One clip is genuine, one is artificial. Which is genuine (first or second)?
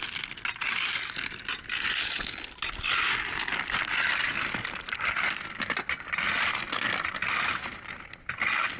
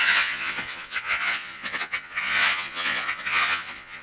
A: first